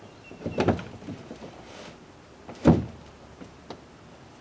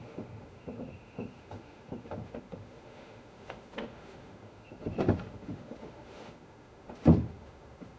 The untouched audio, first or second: first